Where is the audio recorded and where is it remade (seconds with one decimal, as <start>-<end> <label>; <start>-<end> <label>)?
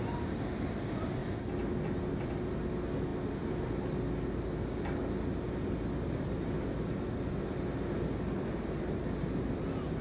0.0-10.0 recorded